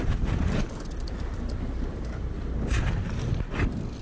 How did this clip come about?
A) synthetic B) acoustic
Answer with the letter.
B